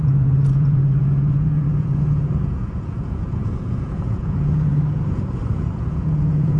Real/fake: fake